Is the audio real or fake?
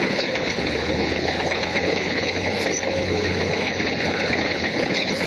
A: fake